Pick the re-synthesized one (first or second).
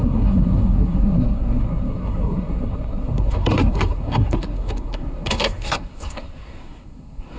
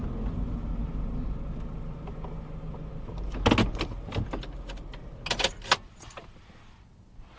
first